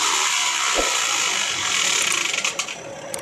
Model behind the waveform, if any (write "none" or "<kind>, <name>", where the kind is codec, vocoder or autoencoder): vocoder, BigVGAN v2